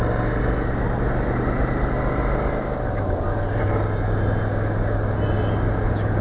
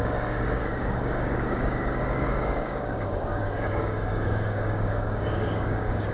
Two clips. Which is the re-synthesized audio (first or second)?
second